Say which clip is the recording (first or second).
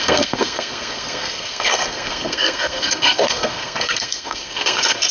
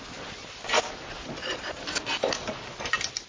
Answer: second